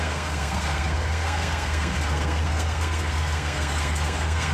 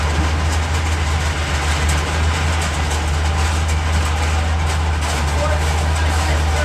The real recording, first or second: second